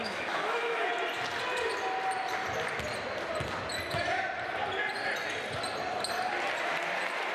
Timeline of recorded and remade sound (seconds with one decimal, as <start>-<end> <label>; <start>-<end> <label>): 0.0-0.9 remade; 0.9-7.3 recorded